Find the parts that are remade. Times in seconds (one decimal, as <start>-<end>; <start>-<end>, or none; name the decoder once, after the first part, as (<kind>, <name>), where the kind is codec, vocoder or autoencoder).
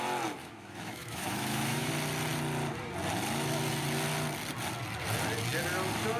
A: 0.4-1.9 (autoencoder, DAC-VAE)